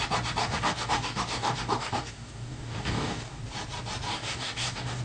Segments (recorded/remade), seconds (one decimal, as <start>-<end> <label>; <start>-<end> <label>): 0.0-0.4 recorded; 0.4-3.4 remade; 3.4-4.1 recorded; 4.1-5.0 remade